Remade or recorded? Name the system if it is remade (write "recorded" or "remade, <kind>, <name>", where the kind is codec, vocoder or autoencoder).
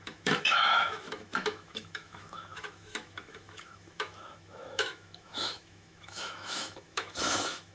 remade, autoencoder, DAC-VAE